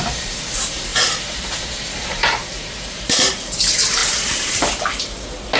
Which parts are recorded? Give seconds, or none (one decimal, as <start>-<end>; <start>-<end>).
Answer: 4.0-5.6